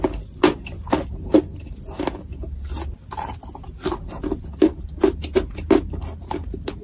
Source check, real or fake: real